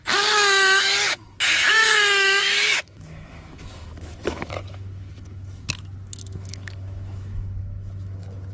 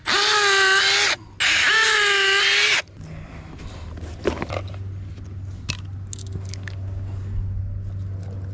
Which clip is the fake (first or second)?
first